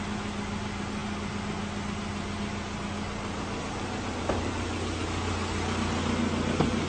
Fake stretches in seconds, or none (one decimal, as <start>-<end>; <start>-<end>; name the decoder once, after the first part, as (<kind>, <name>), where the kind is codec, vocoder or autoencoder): none